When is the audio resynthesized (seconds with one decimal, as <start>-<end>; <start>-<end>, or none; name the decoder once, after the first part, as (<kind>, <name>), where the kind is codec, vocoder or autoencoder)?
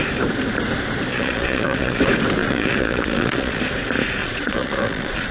1.1-2.0 (vocoder, Vocos); 2.4-3.6; 4.2-5.3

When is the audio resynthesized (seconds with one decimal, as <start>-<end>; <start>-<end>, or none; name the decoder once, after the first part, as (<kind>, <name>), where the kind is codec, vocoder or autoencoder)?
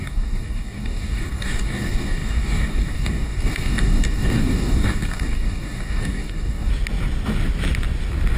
0.0-6.7 (codec, DAC)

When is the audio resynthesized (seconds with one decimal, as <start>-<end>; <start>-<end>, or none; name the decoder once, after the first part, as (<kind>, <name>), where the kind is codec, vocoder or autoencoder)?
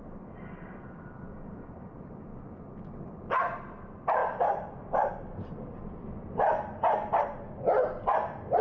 none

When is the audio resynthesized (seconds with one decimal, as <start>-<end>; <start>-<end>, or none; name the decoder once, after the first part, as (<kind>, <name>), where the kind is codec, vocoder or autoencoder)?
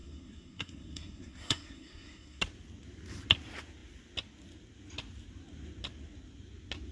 0.0-2.4 (codec, SNAC)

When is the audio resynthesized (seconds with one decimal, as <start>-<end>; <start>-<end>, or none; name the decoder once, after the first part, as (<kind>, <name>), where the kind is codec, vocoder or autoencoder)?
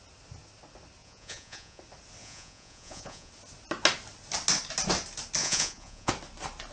1.0-1.8 (vocoder, Vocos); 2.2-3.3; 5.4-6.1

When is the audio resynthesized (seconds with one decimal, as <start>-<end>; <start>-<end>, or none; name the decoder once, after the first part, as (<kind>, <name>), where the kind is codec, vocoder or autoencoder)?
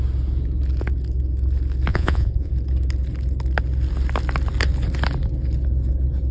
1.9-2.5 (vocoder, Vocos)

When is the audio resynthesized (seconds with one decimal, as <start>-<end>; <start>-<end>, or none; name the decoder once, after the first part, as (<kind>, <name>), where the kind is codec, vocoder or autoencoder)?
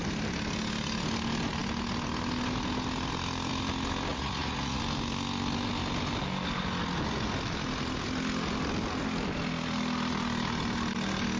4.1-4.8 (vocoder, Vocos)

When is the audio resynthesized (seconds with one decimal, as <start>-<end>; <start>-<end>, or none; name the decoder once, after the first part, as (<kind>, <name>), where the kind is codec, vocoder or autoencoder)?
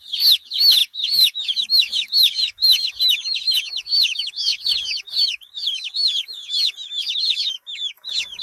0.0-8.4 (codec, DAC)